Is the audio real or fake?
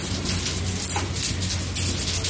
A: real